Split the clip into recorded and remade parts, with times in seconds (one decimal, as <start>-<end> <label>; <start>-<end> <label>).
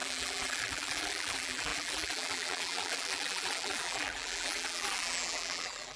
0.0-6.0 remade